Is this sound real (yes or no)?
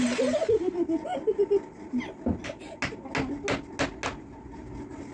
yes